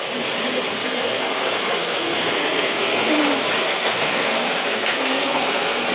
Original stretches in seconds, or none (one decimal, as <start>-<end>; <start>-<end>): 0.0-0.8; 3.1-3.6